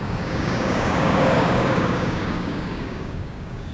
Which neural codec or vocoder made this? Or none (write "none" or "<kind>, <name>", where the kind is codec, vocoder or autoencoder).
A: codec, DAC